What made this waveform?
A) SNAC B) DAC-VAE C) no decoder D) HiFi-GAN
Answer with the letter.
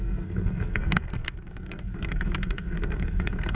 A